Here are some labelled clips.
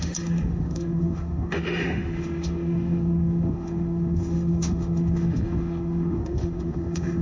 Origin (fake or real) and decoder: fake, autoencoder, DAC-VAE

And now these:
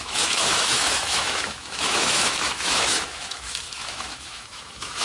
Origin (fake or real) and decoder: fake, autoencoder, DAC-VAE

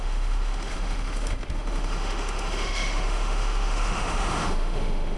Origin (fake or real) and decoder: fake, autoencoder, DAC-VAE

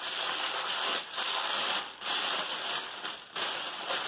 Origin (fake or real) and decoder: real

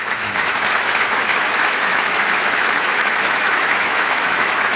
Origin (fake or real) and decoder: fake, autoencoder, DAC-VAE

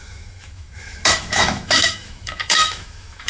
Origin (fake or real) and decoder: fake, autoencoder, DAC-VAE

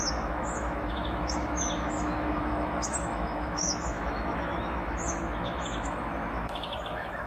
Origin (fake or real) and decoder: fake, autoencoder, DAC-VAE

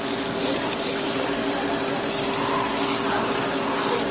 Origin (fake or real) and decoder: real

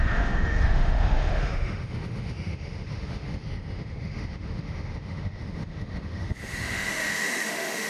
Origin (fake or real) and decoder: fake, autoencoder, DAC-VAE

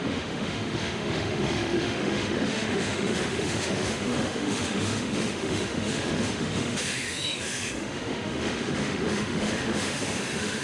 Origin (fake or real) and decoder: fake, autoencoder, DAC-VAE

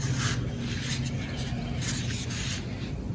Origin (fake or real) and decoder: real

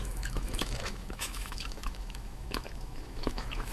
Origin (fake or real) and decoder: fake, autoencoder, DAC-VAE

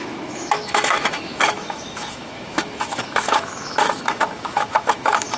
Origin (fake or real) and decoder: fake, autoencoder, DAC-VAE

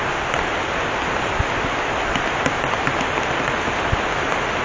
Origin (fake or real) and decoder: real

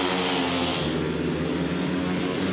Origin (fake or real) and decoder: real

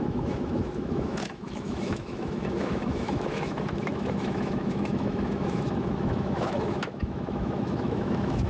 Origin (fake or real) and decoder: fake, autoencoder, DAC-VAE